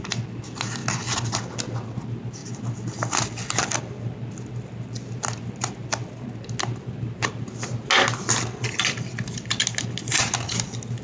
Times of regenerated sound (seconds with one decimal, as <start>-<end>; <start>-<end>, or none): none